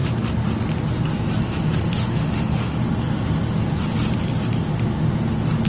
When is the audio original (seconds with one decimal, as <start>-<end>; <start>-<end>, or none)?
0.0-2.0; 2.8-5.7